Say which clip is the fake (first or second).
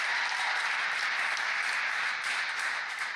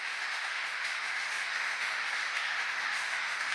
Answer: second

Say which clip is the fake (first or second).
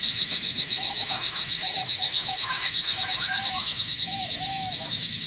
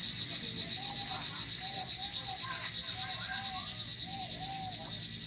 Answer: first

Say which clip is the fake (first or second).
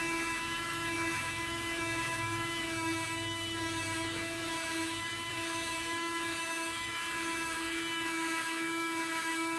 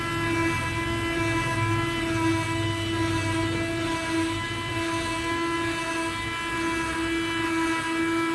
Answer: first